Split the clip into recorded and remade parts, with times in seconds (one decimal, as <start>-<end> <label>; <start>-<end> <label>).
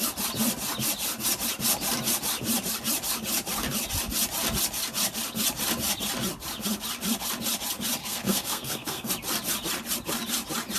0.0-8.0 recorded; 8.0-9.1 remade; 9.1-10.8 recorded